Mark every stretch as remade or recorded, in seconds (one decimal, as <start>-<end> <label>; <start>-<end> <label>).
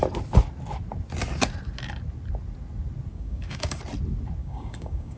0.0-3.1 recorded; 3.1-3.8 remade; 3.8-4.4 recorded; 4.4-5.2 remade